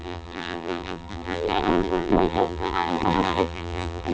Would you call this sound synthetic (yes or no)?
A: yes